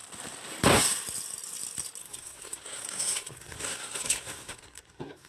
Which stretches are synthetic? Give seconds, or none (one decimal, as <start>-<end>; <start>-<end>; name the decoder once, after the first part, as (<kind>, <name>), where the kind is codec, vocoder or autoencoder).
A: 2.0-5.3 (codec, SNAC)